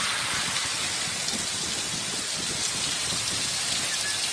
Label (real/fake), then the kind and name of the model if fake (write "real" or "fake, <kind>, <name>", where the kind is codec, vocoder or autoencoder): real